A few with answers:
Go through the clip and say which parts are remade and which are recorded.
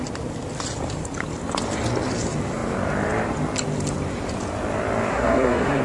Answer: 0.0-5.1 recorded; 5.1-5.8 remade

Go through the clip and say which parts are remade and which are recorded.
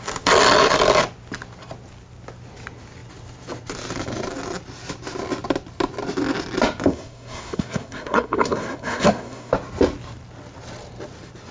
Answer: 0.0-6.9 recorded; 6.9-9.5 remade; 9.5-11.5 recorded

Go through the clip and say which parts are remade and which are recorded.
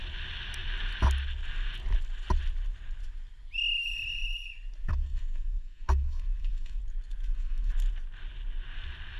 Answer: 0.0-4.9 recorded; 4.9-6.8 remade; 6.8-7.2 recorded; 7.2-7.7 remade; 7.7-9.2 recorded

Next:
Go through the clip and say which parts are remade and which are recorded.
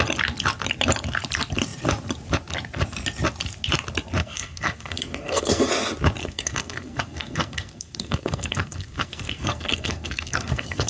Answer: 0.0-4.2 recorded; 4.2-5.7 remade; 5.7-6.2 recorded; 6.2-10.9 remade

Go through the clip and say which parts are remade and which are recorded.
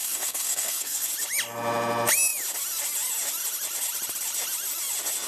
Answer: 0.0-1.1 remade; 1.1-5.3 recorded